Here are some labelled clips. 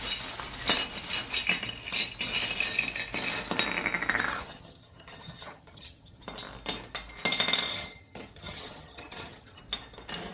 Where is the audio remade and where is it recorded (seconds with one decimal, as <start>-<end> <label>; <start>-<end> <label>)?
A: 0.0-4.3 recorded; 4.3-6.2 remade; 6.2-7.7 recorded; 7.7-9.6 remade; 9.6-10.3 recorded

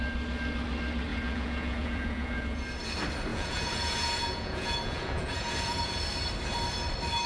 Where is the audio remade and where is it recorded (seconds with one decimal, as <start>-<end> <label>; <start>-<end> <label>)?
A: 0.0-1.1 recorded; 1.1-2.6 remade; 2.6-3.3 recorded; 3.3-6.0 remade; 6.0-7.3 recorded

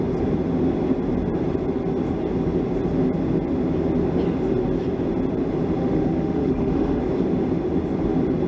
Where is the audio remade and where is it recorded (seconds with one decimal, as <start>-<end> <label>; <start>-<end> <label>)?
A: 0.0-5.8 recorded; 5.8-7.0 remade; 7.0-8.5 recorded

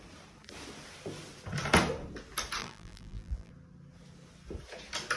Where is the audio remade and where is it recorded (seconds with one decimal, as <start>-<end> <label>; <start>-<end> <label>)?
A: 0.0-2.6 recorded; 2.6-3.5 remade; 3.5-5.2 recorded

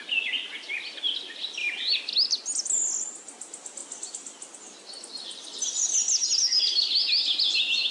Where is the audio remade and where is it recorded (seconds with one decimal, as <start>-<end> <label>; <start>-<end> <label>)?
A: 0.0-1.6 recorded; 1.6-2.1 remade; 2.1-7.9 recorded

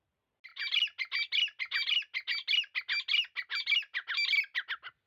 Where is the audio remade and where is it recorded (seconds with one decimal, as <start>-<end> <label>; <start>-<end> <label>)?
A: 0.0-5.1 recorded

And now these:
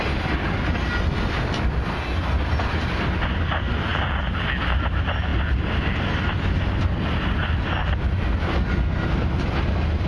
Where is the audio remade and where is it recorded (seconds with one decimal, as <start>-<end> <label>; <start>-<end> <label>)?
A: 0.0-10.1 recorded

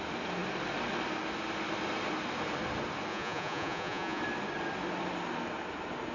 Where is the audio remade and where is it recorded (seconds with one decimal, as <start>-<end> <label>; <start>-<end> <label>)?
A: 0.0-3.1 recorded; 3.1-4.2 remade; 4.2-6.1 recorded